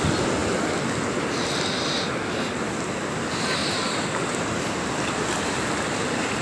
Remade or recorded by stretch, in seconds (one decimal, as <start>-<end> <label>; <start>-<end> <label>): 0.0-6.4 recorded